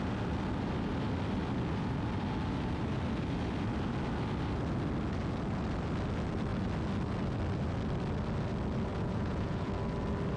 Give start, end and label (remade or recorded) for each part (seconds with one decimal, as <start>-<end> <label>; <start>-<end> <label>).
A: 0.0-8.9 recorded; 8.9-9.7 remade; 9.7-10.4 recorded